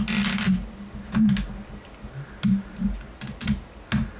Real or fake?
real